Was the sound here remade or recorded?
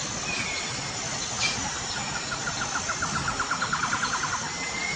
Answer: recorded